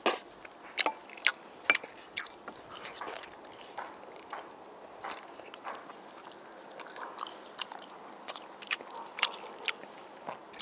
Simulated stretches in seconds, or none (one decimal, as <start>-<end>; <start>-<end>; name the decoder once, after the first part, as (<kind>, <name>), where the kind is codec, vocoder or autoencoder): none